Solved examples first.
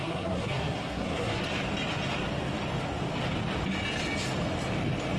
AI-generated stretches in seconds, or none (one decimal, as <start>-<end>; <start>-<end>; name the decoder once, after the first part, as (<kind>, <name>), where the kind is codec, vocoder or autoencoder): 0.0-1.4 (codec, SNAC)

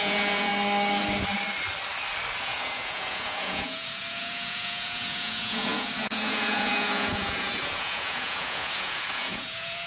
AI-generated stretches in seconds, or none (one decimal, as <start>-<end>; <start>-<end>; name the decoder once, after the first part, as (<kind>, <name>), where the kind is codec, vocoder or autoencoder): 0.0-0.5 (vocoder, Vocos); 2.4-9.9

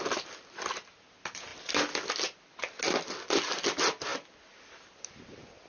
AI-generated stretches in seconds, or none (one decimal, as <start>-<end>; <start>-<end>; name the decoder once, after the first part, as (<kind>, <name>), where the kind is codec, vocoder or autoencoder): none

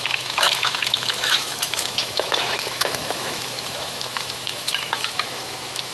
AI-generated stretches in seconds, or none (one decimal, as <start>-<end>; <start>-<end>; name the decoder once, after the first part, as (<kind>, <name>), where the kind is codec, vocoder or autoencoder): 0.0-5.9 (autoencoder, DAC-VAE)

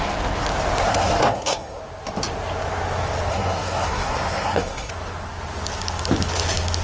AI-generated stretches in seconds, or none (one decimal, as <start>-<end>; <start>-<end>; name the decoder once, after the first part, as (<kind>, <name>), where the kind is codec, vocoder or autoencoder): 0.8-1.8 (codec, SNAC); 3.3-4.9

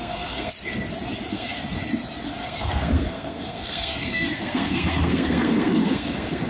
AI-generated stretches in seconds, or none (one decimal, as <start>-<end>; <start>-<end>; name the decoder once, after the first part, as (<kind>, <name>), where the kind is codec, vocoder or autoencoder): 0.0-0.5 (codec, SNAC); 1.3-1.8; 2.4-6.5